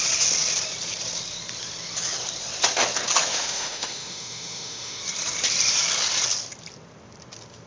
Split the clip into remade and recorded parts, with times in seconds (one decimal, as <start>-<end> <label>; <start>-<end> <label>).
0.0-3.2 recorded; 3.2-5.0 remade; 5.0-7.7 recorded

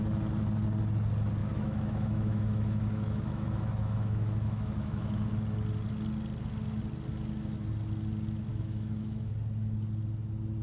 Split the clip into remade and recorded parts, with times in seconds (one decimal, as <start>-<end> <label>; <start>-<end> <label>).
0.0-1.4 recorded; 1.4-5.3 remade; 5.3-8.5 recorded; 8.5-9.3 remade; 9.3-10.6 recorded